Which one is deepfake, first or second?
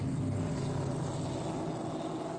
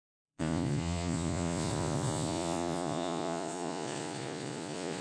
second